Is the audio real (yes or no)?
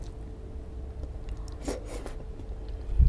yes